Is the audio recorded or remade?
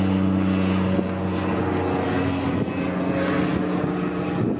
recorded